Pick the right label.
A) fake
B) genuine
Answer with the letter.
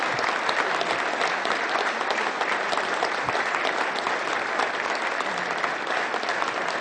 B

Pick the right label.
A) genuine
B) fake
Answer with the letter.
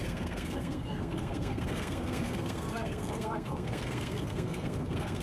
B